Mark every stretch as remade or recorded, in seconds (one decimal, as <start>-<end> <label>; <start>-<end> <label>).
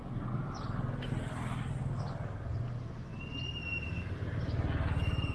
0.0-5.3 recorded